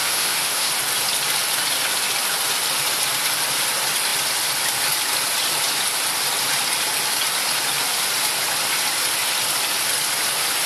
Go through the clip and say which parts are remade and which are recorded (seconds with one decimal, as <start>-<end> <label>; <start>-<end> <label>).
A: 0.0-0.7 remade; 0.7-10.7 recorded